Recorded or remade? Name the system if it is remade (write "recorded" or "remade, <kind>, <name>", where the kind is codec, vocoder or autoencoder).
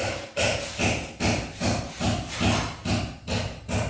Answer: recorded